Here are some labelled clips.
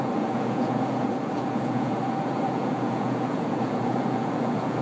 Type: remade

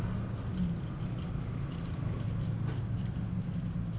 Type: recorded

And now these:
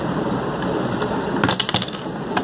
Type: recorded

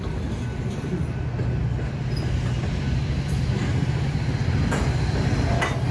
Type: recorded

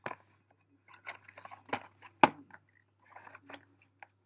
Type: recorded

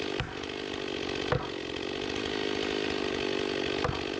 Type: recorded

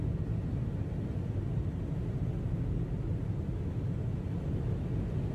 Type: recorded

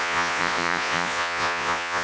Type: remade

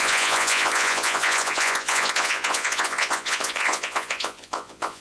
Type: remade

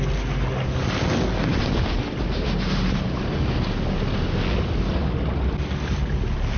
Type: recorded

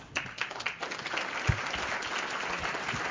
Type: recorded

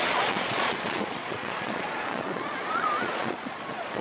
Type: remade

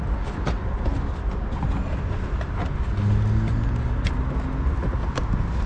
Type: recorded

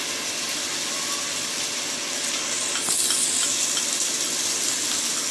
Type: recorded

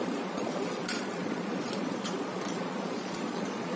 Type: remade